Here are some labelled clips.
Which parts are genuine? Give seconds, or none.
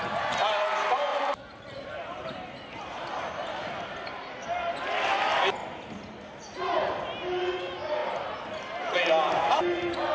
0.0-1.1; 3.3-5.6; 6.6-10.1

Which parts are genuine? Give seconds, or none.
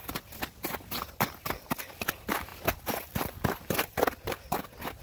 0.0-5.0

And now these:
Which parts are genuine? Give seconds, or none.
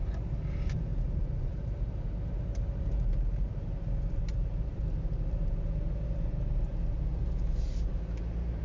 0.0-0.9; 4.8-7.1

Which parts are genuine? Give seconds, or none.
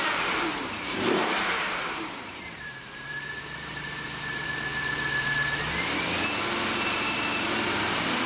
4.7-6.7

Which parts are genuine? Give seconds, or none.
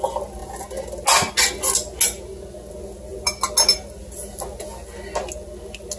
0.0-6.0